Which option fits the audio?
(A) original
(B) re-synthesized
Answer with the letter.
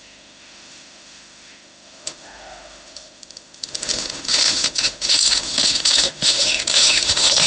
B